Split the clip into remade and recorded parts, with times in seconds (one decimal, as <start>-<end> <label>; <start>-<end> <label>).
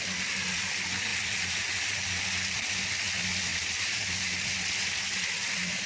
0.0-3.5 recorded; 3.5-4.0 remade; 4.0-5.9 recorded